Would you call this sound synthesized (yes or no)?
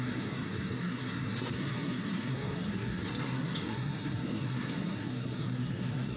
yes